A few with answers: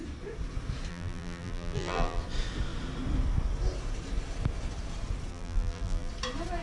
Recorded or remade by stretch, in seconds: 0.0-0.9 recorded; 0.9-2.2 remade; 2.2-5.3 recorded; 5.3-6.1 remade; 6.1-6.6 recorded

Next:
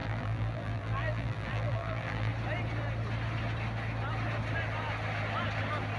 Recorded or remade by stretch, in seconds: 0.0-2.3 remade; 2.3-6.0 recorded

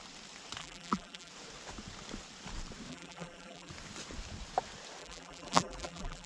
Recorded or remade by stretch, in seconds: 0.0-0.6 recorded; 0.6-1.3 remade; 1.3-2.9 recorded; 2.9-3.7 remade; 3.7-5.0 recorded; 5.0-6.3 remade

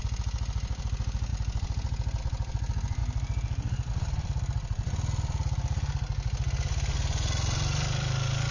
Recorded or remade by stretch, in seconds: 0.0-8.5 remade

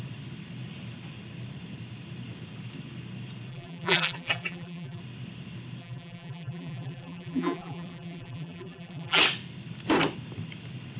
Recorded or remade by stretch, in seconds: 0.0-3.5 recorded; 3.5-5.0 remade; 5.0-5.8 recorded; 5.8-9.2 remade; 9.2-11.0 recorded